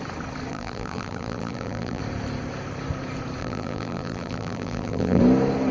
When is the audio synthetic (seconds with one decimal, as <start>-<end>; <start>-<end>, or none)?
0.5-2.0; 3.4-5.2